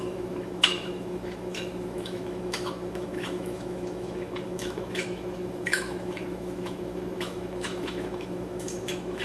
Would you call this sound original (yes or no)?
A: no